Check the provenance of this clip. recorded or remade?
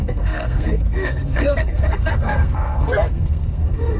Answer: remade